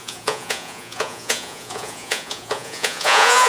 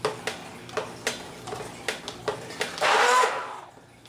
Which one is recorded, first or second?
second